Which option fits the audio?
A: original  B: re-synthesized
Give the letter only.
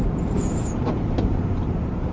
B